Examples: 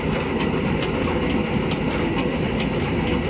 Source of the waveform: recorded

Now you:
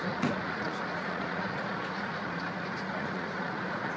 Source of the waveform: remade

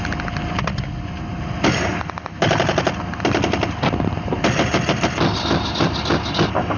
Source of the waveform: recorded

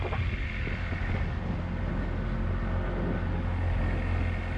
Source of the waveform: recorded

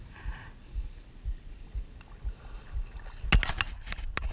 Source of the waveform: recorded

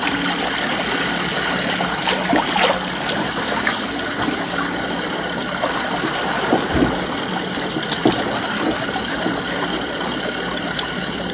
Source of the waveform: recorded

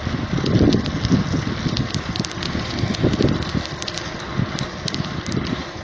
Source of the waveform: recorded